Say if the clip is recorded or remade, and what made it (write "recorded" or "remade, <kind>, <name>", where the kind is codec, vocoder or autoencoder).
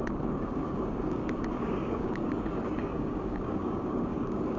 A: remade, codec, DAC